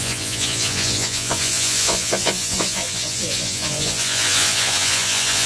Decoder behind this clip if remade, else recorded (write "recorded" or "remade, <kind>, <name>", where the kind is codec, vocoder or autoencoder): remade, vocoder, Vocos